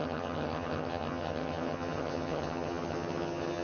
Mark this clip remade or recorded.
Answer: remade